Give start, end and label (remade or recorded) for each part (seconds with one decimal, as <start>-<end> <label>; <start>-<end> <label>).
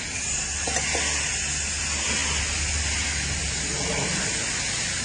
0.0-5.0 recorded